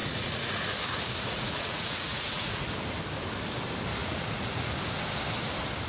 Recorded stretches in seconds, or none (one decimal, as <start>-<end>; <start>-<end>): 2.7-4.0; 4.7-5.9